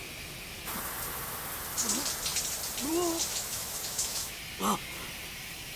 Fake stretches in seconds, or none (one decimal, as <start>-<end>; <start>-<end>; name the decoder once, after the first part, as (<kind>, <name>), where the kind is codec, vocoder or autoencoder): 3.3-4.4 (autoencoder, DAC-VAE)